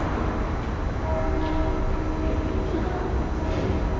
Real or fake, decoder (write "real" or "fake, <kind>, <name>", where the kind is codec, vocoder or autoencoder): real